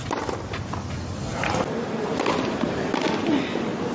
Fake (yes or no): no